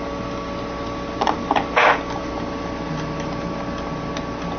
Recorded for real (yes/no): yes